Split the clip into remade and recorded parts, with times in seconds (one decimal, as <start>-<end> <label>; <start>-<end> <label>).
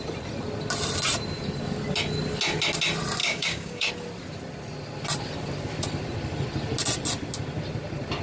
0.0-3.2 recorded; 3.2-3.9 remade; 3.9-8.2 recorded